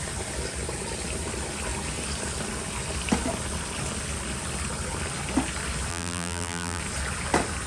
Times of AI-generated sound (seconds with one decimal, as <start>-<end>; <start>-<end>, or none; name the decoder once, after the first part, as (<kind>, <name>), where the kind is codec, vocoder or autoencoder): 5.9-6.8 (vocoder, BigVGAN v2)

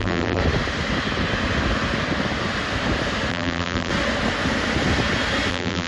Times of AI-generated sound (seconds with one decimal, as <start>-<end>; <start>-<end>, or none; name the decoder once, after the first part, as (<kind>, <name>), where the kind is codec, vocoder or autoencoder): 0.0-0.4 (vocoder, BigVGAN v2); 3.3-3.9; 5.5-5.9

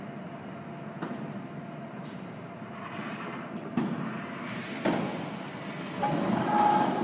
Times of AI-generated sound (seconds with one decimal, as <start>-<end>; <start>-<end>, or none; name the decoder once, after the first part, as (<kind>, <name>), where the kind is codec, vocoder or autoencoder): 1.1-4.9 (vocoder, BigVGAN v2)

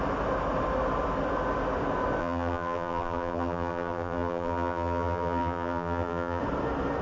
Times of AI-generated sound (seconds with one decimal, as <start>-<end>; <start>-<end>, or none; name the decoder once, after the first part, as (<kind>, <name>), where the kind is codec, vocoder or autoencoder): 2.2-6.4 (vocoder, BigVGAN v2)

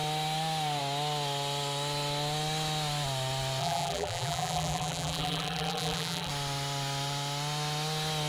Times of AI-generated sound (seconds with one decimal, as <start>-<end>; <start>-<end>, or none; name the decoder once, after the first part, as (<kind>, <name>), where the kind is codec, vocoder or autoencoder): 3.6-6.3 (vocoder, BigVGAN v2)

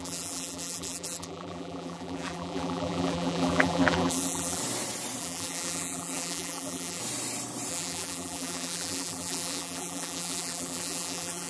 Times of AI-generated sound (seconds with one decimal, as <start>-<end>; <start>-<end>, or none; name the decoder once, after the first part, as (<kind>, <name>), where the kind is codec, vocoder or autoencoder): 0.0-4.6 (vocoder, BigVGAN v2); 5.2-7.0; 7.7-11.5

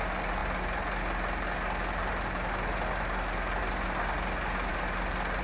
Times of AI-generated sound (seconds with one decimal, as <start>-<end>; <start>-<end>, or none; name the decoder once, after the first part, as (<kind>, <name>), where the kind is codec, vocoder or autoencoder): none